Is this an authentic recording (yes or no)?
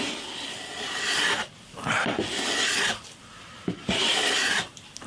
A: no